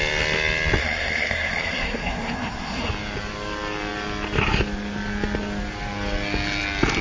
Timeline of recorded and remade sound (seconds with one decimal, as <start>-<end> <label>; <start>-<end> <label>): 0.0-0.8 recorded; 0.8-2.9 remade; 2.9-7.0 recorded